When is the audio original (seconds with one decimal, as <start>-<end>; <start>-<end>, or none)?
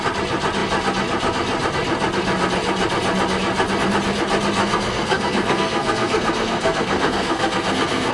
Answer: 0.0-4.6